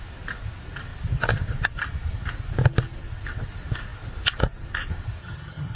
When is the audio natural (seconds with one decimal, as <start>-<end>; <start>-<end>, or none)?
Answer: 0.0-5.2